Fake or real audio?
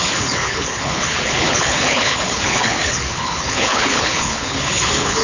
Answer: fake